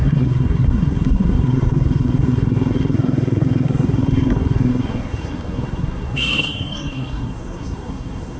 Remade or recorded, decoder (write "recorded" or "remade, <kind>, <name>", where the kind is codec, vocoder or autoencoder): remade, codec, SNAC